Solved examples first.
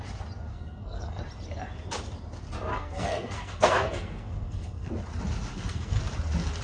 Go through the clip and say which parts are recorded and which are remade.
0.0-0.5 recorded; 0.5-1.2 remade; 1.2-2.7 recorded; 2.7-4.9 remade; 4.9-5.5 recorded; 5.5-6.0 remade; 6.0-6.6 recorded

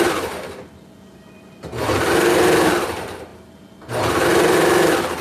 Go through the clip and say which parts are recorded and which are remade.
0.0-5.2 recorded

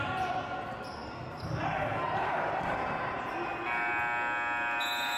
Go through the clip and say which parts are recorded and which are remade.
0.0-5.2 recorded

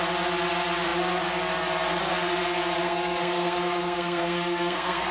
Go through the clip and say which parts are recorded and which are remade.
0.0-2.8 recorded; 2.8-5.1 remade

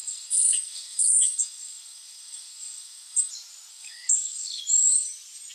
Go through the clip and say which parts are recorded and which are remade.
0.0-3.3 remade; 3.3-3.7 recorded; 3.7-4.6 remade; 4.6-5.5 recorded